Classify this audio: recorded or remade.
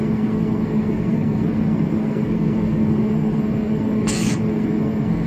remade